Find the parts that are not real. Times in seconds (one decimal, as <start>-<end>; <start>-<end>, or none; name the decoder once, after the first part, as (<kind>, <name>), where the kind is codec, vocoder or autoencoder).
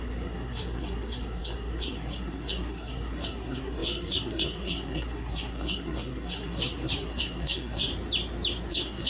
0.0-7.9 (codec, SNAC); 8.7-9.1